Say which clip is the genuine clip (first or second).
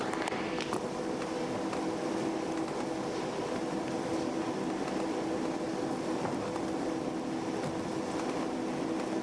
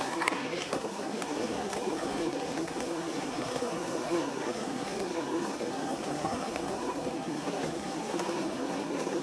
first